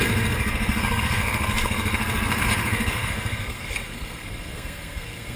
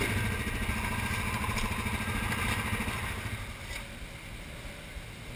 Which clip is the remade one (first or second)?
first